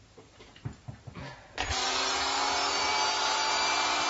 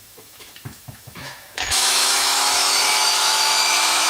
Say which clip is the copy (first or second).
second